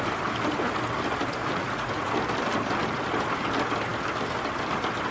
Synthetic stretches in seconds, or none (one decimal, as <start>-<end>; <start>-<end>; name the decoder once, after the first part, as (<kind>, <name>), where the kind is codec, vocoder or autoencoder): 1.4-2.1 (vocoder, Vocos)